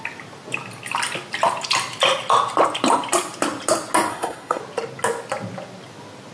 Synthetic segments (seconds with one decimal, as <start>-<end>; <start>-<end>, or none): 4.1-4.6

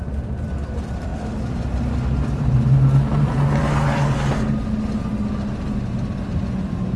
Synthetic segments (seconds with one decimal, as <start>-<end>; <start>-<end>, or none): none